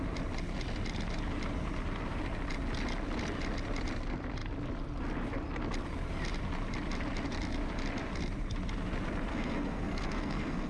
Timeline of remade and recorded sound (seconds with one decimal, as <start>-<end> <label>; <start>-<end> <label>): 0.0-9.3 recorded; 9.3-10.7 remade